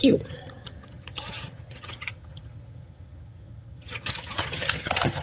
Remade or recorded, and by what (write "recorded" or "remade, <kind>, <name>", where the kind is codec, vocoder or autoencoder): remade, vocoder, HiFi-GAN